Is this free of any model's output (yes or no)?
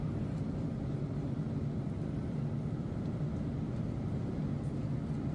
yes